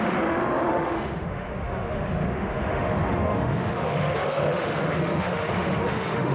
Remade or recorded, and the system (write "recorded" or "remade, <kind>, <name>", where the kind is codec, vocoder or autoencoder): remade, autoencoder, DAC-VAE